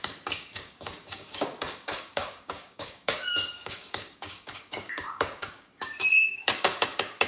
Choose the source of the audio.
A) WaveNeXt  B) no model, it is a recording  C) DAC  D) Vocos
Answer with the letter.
C